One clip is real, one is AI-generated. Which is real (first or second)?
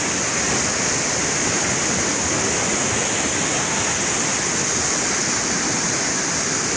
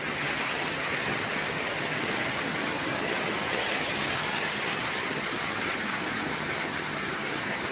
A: first